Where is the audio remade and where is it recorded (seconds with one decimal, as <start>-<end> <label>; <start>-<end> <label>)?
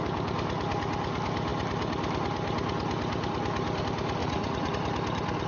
0.0-4.2 recorded; 4.2-4.7 remade; 4.7-5.5 recorded